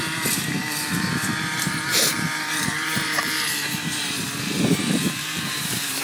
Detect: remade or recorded remade